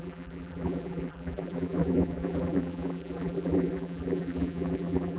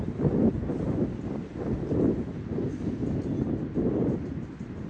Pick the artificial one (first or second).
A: first